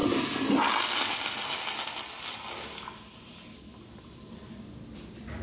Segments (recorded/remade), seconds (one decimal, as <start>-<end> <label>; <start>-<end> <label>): 0.0-5.4 recorded